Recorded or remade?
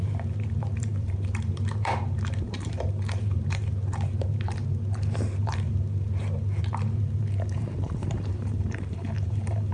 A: remade